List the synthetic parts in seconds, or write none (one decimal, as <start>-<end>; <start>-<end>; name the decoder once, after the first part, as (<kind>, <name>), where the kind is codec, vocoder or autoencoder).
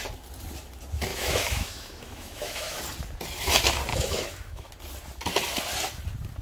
1.1-2.8 (autoencoder, DAC-VAE); 3.9-4.7